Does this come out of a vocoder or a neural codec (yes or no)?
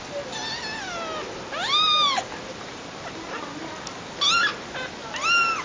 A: no